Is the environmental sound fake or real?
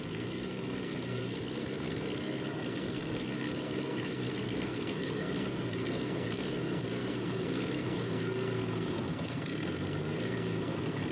fake